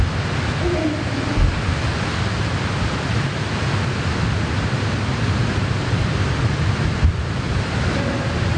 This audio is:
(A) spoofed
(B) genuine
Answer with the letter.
B